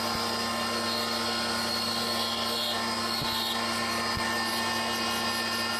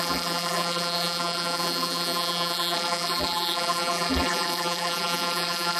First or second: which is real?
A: first